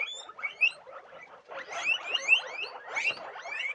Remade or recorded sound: recorded